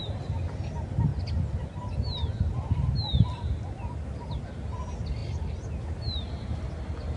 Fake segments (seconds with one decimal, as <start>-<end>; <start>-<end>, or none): none